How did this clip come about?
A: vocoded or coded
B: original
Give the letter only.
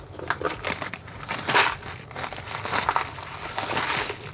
B